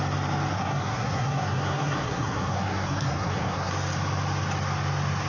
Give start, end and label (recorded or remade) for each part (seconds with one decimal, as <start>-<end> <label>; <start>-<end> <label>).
0.0-0.5 recorded; 0.5-3.7 remade; 3.7-5.3 recorded